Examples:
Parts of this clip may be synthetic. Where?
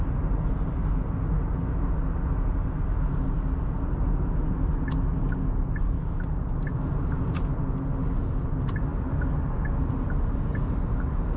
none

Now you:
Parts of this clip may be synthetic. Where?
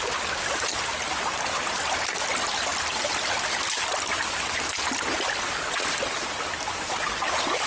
none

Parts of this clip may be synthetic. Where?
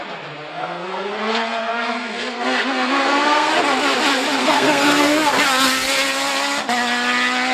0.5-3.5 (codec, SNAC); 4.4-5.3